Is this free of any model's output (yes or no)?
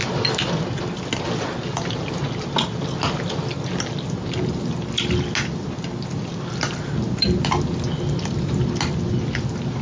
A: yes